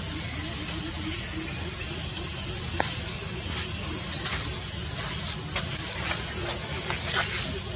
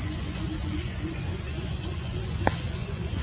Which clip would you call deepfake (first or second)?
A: second